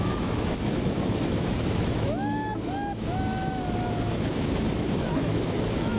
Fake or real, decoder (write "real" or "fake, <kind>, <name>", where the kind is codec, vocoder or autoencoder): fake, autoencoder, DAC-VAE